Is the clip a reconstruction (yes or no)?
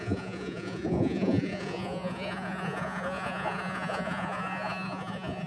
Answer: yes